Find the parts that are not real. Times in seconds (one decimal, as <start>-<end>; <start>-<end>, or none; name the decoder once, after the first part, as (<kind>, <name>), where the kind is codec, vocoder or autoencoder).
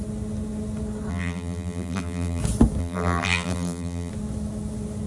1.1-2.4 (vocoder, BigVGAN v2); 2.8-4.1